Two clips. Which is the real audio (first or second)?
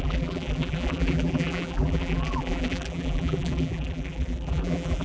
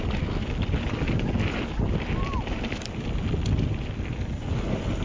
second